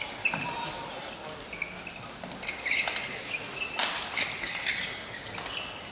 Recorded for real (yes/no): yes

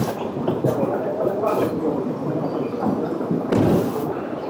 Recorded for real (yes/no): yes